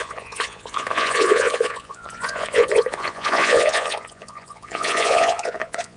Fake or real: fake